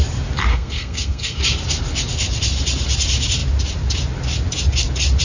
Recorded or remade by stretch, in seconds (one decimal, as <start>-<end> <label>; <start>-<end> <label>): 0.0-0.5 recorded; 0.5-1.4 remade; 1.4-5.2 recorded